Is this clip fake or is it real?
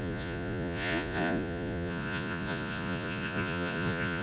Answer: fake